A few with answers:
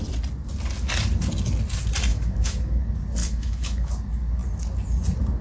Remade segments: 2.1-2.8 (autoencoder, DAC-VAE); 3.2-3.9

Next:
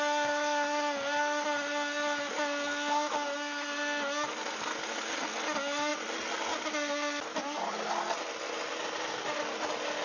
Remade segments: none

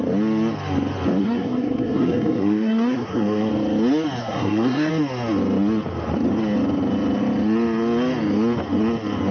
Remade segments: 1.2-3.5 (codec, SNAC); 4.2-4.9